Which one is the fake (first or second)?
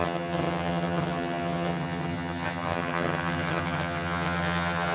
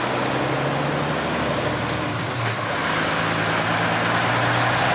first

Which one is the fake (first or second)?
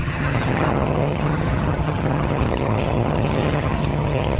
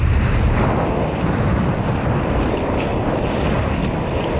first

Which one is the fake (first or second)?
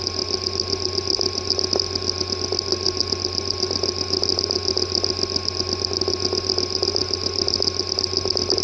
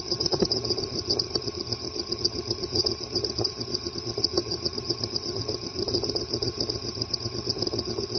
second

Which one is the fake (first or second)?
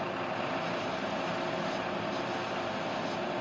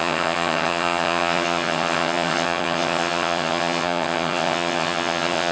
second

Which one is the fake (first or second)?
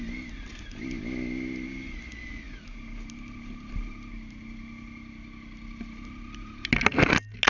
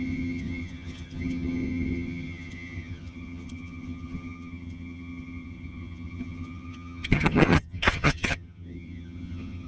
second